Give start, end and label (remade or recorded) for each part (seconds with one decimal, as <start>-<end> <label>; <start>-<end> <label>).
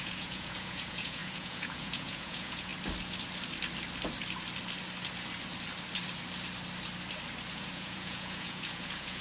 0.0-2.7 remade; 2.7-7.5 recorded; 7.5-9.2 remade